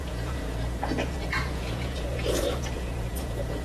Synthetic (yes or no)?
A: yes